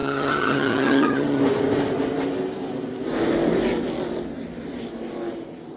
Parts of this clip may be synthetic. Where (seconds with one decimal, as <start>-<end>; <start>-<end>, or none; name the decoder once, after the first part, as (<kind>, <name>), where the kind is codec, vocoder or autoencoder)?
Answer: 0.0-1.4 (vocoder, HiFi-GAN)